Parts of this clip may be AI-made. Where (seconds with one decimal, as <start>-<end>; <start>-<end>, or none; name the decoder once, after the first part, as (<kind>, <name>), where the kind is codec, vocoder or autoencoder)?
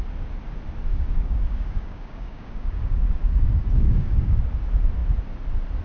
0.9-4.4 (codec, DAC)